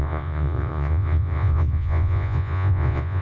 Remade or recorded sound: remade